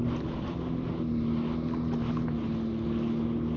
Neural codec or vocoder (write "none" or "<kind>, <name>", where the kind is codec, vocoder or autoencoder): none